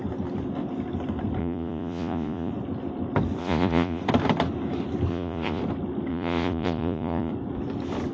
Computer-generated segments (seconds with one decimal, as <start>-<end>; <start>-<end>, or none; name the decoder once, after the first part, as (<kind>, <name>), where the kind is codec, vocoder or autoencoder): 1.4-2.5 (vocoder, Vocos); 3.4-4.0; 5.1-5.6; 6.1-7.3